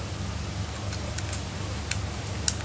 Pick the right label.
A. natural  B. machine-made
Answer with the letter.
A